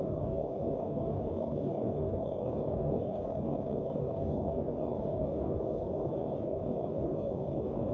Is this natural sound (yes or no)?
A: no